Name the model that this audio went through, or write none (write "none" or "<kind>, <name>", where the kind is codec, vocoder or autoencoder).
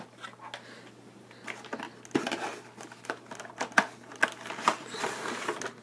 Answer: none